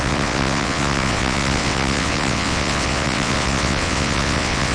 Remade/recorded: remade